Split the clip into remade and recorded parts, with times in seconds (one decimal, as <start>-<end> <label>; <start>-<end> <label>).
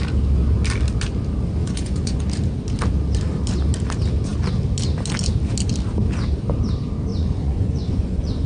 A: 0.0-1.6 recorded; 1.6-2.2 remade; 2.2-7.1 recorded; 7.1-8.5 remade